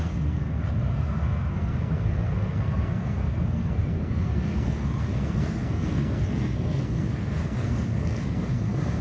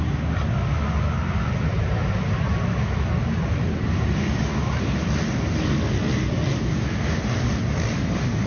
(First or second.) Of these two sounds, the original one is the second